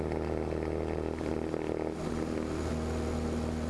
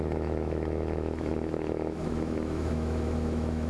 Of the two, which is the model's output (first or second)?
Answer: second